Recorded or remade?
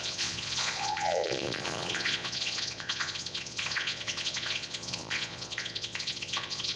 remade